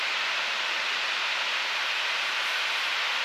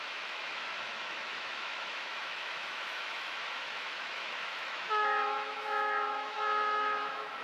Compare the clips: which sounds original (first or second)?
first